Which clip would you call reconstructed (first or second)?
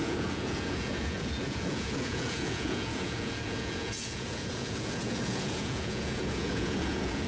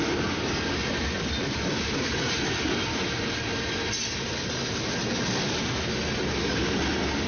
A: first